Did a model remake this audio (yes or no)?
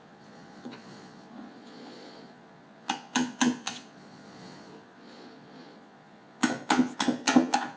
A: yes